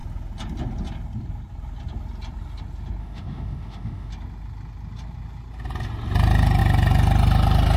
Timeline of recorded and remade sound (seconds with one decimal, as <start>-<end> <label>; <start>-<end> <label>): 0.0-3.0 recorded; 3.0-4.1 remade; 4.1-7.8 recorded